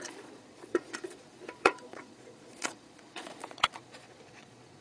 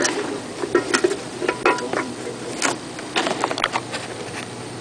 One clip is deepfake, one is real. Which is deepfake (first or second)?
first